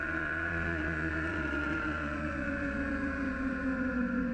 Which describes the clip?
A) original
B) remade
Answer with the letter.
B